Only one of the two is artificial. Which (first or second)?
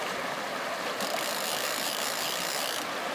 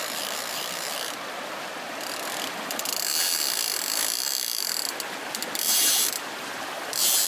second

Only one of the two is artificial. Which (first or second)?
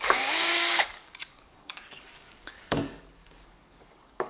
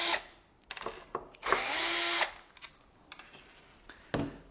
first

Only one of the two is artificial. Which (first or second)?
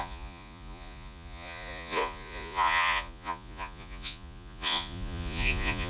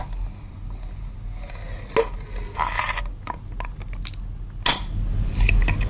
first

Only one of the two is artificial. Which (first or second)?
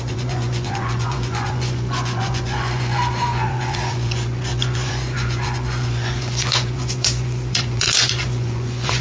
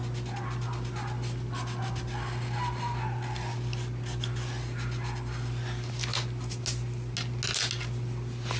first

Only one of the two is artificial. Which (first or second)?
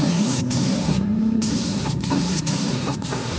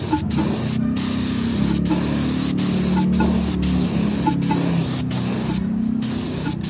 first